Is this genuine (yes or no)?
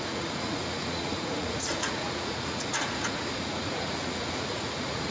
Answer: no